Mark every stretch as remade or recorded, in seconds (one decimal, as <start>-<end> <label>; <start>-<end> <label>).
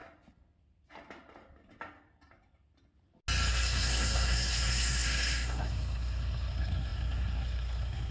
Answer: 0.0-3.5 recorded; 3.5-8.1 remade